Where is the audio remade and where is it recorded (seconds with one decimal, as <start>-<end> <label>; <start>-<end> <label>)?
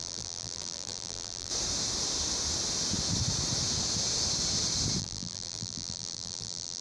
0.0-1.5 remade; 1.5-5.0 recorded; 5.0-6.8 remade